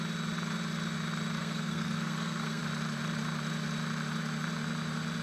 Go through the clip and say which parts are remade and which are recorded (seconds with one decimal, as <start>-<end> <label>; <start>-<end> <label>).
0.0-1.4 recorded; 1.4-2.6 remade; 2.6-5.2 recorded